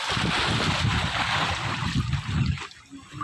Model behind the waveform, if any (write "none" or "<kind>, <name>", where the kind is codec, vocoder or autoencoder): none